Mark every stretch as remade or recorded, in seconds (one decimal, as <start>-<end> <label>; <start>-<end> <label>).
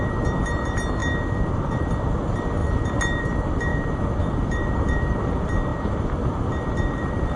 0.0-1.0 remade; 1.0-1.5 recorded; 1.5-2.6 remade; 2.6-3.2 recorded; 3.2-7.4 remade